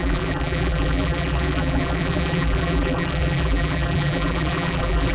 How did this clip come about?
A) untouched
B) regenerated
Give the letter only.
B